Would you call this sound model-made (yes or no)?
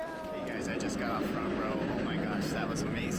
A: yes